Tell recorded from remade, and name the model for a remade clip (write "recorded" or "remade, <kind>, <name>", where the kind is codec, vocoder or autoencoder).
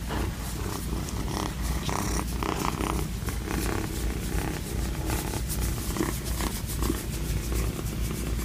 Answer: recorded